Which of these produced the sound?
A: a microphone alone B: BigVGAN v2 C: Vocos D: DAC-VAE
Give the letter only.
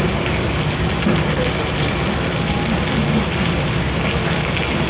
A